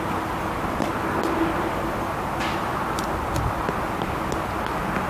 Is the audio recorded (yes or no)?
yes